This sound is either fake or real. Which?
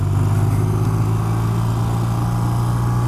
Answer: real